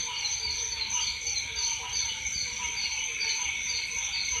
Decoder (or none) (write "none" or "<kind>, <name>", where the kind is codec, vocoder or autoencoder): none